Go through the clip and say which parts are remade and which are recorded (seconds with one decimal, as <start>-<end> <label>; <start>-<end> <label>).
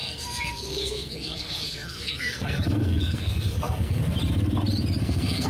0.0-4.0 remade; 4.0-5.0 recorded; 5.0-5.5 remade